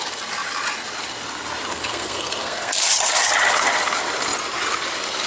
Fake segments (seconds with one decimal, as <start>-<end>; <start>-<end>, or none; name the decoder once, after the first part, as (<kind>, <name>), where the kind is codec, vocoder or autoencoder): 1.7-2.7 (codec, SNAC)